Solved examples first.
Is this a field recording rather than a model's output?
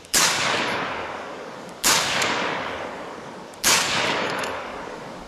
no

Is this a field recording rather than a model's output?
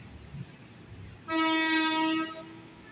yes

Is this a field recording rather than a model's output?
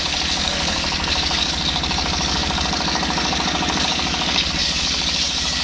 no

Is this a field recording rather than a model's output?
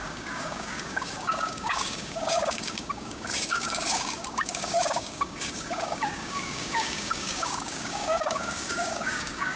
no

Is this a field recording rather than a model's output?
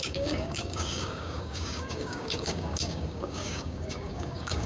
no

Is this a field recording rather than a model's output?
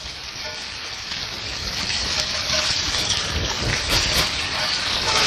no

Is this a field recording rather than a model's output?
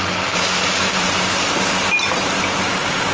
yes